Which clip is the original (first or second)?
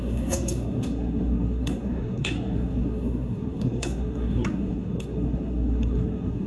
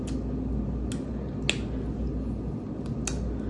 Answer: second